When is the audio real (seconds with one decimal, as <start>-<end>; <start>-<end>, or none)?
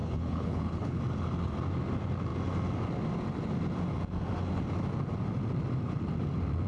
1.0-6.7